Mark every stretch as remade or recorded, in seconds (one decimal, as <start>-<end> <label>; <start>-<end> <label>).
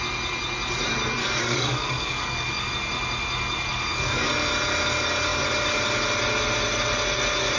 0.0-1.2 recorded; 1.2-2.7 remade; 2.7-3.7 recorded; 3.7-4.3 remade; 4.3-7.6 recorded